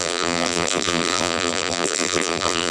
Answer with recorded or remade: remade